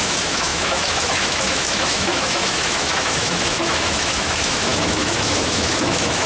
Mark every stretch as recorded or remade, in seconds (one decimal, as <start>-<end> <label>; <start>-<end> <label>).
0.0-6.3 remade